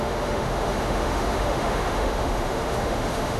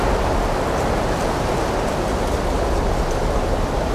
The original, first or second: second